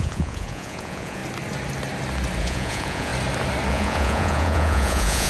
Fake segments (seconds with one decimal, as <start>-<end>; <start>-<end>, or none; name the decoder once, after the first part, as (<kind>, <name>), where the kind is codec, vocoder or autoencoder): 0.0-1.2 (vocoder, Vocos); 2.4-3.1; 3.7-5.3